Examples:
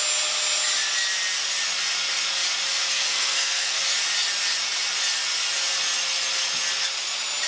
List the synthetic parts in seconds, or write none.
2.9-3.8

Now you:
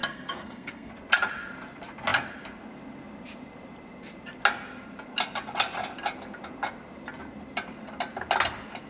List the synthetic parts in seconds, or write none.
0.0-0.9

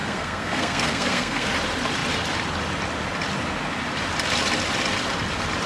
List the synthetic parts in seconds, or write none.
0.0-1.5

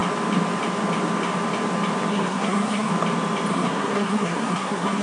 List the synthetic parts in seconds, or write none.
2.1-2.9; 3.5-5.0

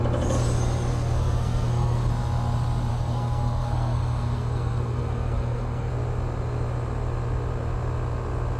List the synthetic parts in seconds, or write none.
0.9-2.1; 2.9-5.9

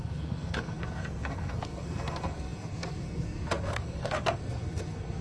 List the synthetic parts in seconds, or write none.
0.0-5.2